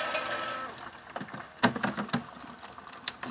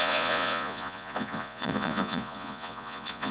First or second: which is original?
first